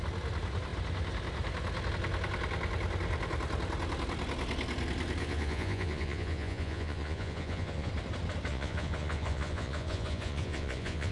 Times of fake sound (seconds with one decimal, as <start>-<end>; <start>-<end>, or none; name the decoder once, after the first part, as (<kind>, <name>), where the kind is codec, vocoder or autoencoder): 5.2-7.9 (vocoder, Vocos); 8.5-11.1